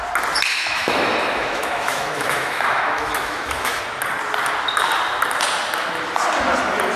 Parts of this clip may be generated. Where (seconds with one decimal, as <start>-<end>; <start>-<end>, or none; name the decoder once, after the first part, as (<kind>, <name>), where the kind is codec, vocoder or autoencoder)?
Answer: 0.5-3.8 (autoencoder, DAC-VAE)